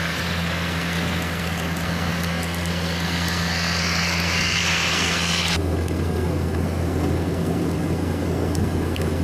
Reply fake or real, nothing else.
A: fake